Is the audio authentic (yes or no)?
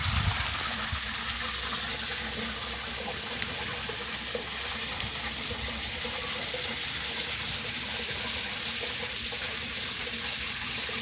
yes